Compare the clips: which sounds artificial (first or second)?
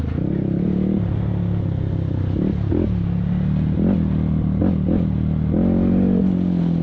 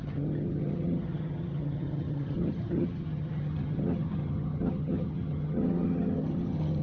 second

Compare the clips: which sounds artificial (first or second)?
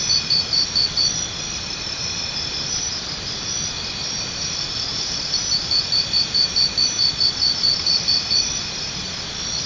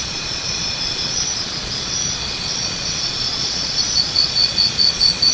second